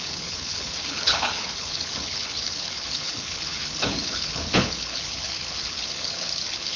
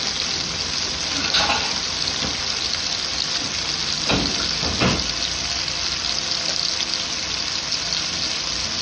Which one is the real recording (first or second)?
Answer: second